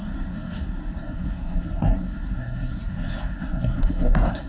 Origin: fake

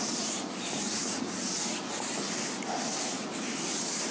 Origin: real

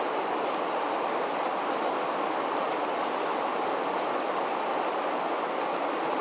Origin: real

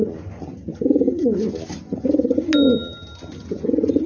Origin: real